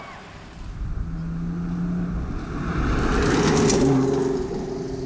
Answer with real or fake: real